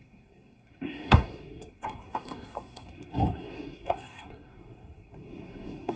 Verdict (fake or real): fake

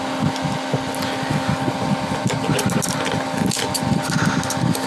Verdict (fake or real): real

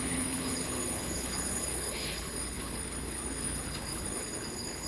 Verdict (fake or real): fake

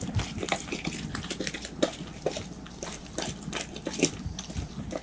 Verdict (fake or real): real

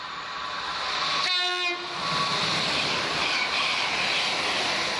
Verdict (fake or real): real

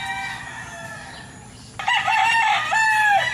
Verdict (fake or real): real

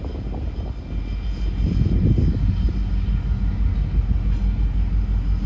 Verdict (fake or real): real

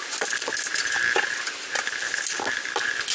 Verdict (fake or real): real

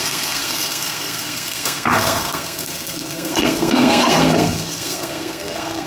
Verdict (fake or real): fake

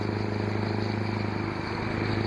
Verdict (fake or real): real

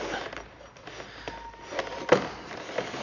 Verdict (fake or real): real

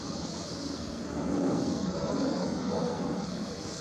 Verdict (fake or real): fake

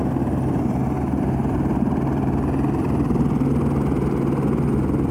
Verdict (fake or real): real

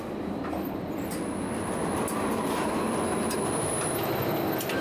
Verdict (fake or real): fake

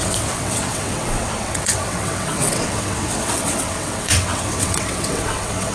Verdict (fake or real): fake